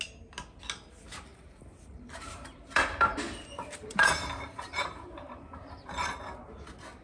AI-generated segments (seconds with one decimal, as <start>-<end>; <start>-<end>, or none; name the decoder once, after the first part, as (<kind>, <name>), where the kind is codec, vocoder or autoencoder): 1.3-5.5 (vocoder, BigVGAN v2)